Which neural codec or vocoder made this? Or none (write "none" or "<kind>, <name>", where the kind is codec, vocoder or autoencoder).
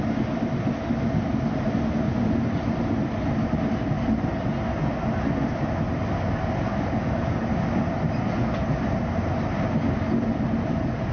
none